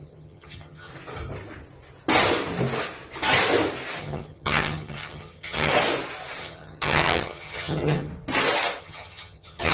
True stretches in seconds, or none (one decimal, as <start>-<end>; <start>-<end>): 0.9-4.0; 5.7-6.4; 8.1-8.8